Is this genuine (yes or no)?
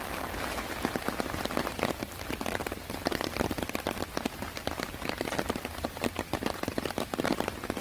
no